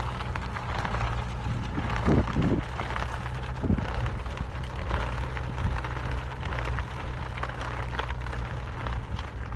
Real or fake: real